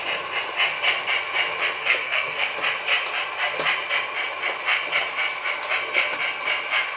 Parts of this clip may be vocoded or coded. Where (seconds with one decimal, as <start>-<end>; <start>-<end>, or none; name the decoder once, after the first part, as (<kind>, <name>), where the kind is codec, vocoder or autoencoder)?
1.8-2.5 (codec, SNAC)